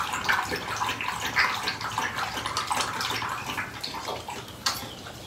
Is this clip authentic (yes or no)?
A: yes